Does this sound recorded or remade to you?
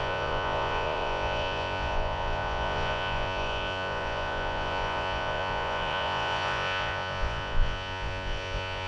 remade